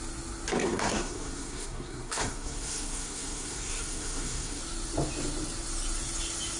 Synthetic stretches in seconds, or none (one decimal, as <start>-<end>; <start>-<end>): 0.6-4.6